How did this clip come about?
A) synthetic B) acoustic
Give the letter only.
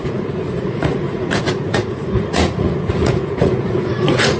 A